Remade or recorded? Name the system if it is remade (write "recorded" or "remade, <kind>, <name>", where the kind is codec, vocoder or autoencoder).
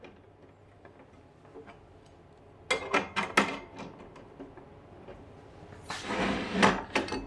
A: recorded